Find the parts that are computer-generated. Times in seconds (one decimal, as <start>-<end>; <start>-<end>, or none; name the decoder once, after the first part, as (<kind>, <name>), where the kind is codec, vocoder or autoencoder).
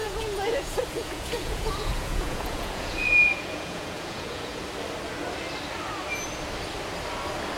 0.0-4.6 (vocoder, Vocos)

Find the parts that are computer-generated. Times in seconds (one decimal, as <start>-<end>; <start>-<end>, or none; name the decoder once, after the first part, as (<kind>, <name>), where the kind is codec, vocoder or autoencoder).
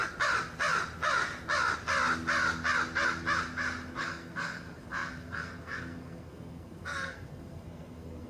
4.0-8.3 (codec, SNAC)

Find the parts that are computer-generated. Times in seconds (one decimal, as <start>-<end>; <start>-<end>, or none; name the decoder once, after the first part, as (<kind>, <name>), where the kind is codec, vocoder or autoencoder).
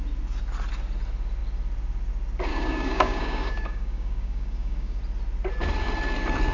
2.5-5.0 (codec, DAC)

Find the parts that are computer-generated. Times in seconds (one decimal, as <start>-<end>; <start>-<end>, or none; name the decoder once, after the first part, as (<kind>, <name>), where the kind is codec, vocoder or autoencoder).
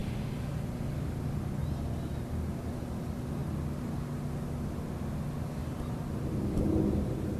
0.5-1.6 (vocoder, BigVGAN v2); 2.4-3.4; 4.2-7.4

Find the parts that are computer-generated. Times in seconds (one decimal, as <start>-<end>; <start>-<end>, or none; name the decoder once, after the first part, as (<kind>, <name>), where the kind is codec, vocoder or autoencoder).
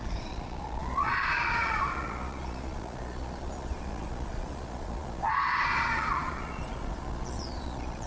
0.0-8.1 (vocoder, Vocos)